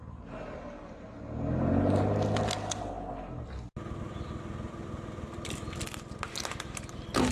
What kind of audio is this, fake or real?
real